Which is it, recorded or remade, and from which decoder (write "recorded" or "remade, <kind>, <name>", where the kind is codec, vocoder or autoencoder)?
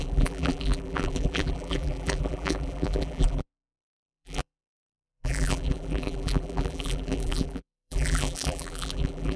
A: remade, vocoder, BigVGAN v2